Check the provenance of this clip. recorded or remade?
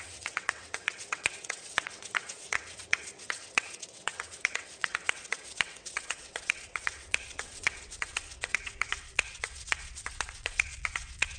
remade